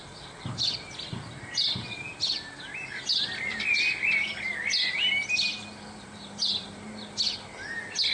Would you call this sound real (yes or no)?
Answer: yes